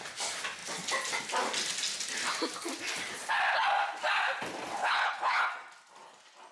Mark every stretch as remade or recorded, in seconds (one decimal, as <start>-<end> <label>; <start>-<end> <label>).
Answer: 0.0-4.8 recorded; 4.8-5.5 remade; 5.5-6.5 recorded